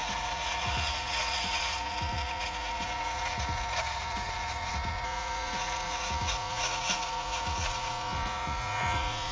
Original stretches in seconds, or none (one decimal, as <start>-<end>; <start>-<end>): none